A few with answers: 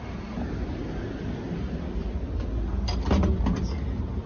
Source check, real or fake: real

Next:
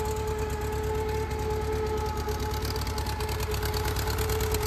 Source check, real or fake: real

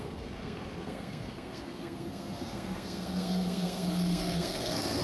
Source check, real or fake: fake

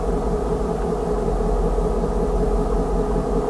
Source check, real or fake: real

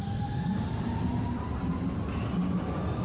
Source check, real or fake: real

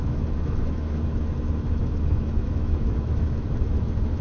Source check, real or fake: fake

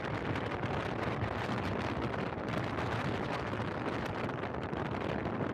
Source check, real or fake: fake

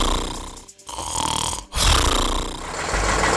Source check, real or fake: real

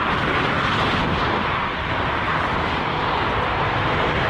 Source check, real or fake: real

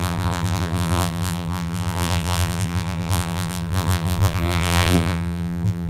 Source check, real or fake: fake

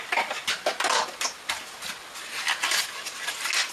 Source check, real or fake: real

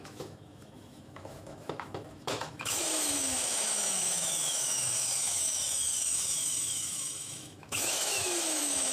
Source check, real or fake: fake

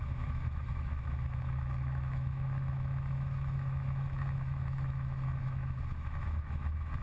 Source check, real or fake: fake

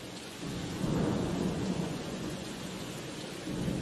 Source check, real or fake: fake